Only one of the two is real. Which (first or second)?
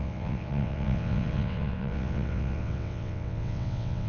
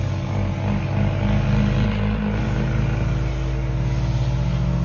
second